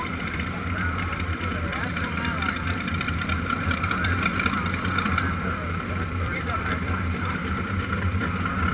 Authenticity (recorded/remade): remade